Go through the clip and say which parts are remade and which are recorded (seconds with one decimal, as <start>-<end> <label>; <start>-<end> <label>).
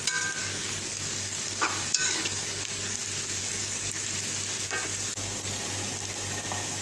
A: 0.0-0.4 recorded; 0.4-3.0 remade; 3.0-3.4 recorded; 3.4-3.9 remade; 3.9-6.8 recorded